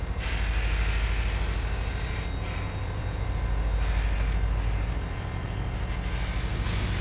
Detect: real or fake real